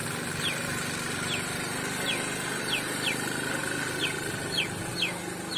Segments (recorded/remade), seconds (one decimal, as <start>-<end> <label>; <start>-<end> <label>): 0.0-5.6 recorded